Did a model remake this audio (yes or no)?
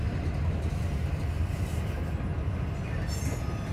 no